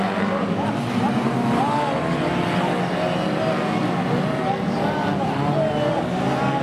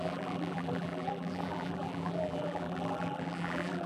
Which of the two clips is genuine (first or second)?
first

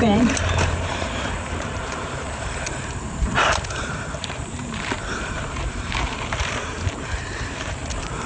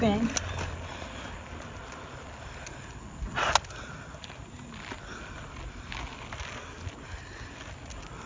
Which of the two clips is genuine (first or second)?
second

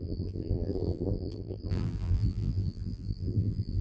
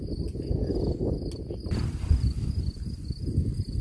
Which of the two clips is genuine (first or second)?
second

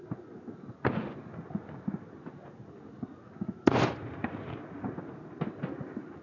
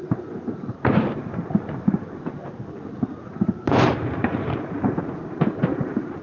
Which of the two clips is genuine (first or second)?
first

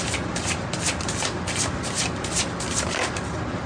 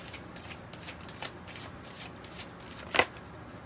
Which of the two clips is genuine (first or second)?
second